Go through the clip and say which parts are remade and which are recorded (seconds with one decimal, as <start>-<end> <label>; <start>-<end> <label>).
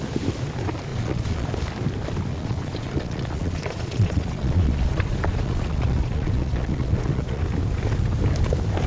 0.0-0.9 recorded; 0.9-1.5 remade; 1.5-2.3 recorded; 2.3-7.4 remade; 7.4-8.9 recorded